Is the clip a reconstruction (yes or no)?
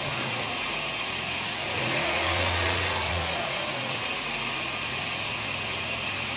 yes